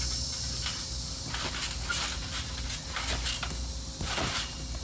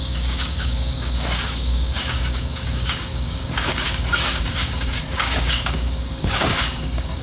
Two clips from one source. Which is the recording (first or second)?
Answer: first